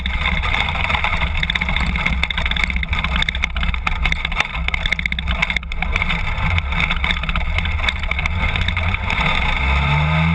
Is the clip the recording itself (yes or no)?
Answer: yes